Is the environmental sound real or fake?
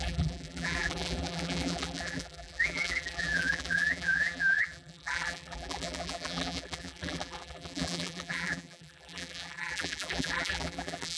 fake